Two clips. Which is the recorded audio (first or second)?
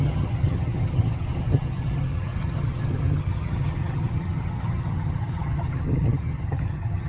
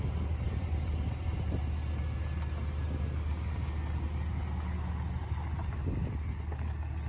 second